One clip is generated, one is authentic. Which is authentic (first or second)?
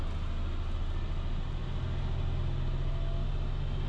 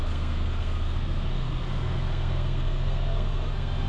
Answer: first